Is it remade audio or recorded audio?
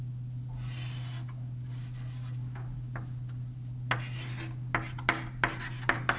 recorded